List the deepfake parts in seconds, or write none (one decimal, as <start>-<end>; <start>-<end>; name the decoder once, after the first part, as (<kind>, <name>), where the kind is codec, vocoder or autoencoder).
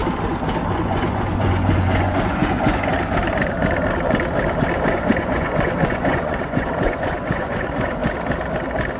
0.7-2.9 (vocoder, Vocos); 4.9-8.0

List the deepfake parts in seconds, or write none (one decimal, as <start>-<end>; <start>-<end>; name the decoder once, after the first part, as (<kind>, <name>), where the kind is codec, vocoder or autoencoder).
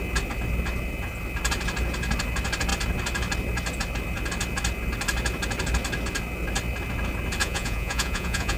7.4-8.6 (vocoder, Vocos)